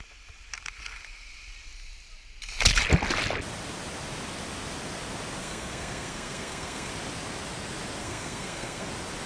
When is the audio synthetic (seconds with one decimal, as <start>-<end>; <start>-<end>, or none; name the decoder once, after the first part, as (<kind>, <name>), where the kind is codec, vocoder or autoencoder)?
5.4-6.9 (codec, SNAC); 8.0-8.9